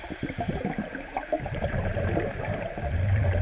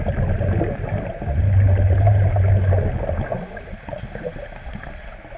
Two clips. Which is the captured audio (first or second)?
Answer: second